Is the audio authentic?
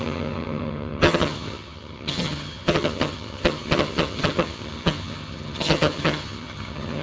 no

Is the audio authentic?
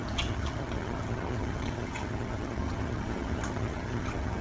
no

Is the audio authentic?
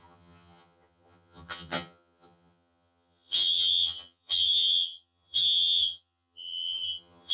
no